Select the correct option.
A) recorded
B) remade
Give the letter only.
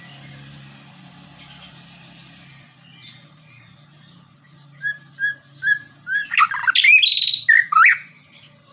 A